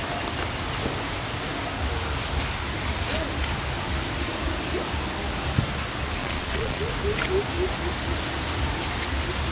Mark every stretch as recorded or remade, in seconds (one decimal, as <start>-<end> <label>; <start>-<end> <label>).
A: 0.0-6.2 recorded; 6.2-6.9 remade; 6.9-9.5 recorded